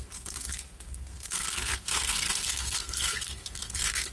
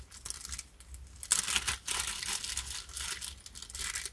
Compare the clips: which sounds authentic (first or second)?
second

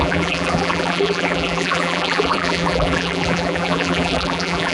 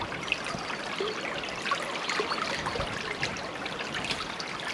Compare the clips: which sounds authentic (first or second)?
second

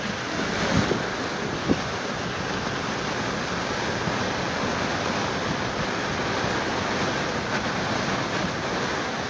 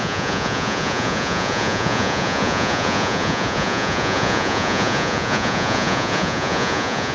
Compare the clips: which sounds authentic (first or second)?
first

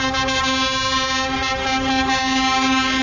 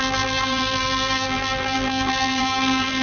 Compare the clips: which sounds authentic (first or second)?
first